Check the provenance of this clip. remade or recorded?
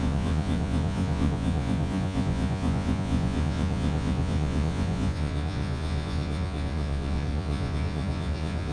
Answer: remade